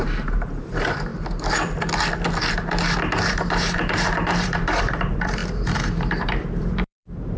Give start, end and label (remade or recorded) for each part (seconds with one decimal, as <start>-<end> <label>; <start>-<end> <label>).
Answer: 0.0-1.1 remade; 1.1-3.3 recorded; 3.3-7.4 remade